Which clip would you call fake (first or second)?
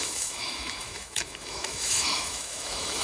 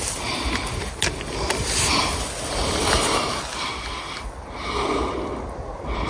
first